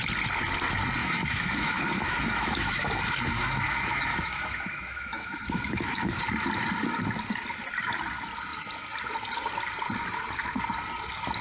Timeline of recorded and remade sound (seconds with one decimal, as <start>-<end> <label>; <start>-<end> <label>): 0.0-1.0 recorded; 1.0-6.2 remade; 6.2-11.4 recorded